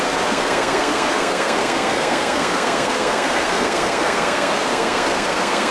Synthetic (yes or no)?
yes